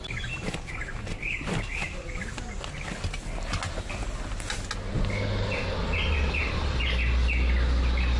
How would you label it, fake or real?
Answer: real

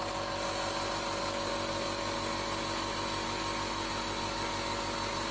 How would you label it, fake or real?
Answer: real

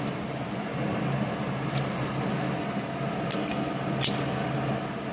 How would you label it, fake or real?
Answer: real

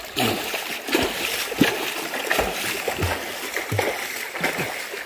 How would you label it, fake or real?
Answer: real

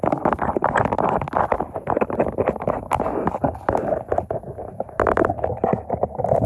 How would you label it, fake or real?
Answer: real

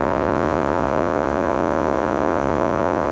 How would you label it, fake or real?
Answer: fake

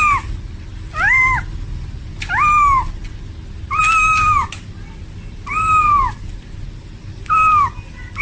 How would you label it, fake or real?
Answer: real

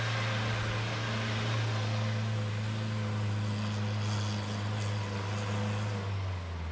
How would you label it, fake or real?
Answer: real